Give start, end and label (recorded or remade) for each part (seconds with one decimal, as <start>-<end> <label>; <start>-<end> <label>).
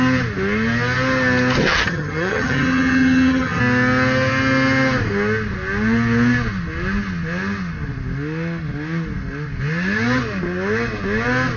0.0-1.6 recorded; 1.6-3.6 remade; 3.6-11.6 recorded